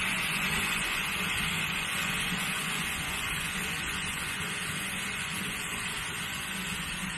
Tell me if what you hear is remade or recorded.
remade